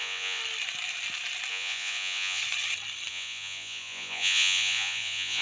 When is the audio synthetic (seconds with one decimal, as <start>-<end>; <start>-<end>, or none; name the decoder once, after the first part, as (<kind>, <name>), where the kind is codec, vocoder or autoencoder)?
0.0-0.4 (vocoder, Vocos); 1.5-2.4; 3.1-5.4